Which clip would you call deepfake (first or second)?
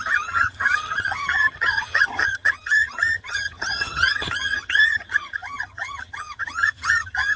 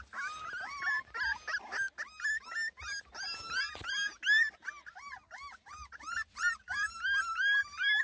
first